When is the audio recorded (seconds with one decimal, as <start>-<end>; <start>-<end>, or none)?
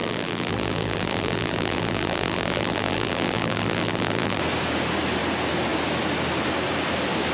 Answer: 4.4-7.3